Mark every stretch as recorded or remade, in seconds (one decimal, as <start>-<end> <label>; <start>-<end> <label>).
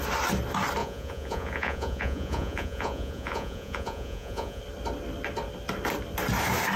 0.0-0.8 recorded; 0.8-4.6 remade; 4.6-6.8 recorded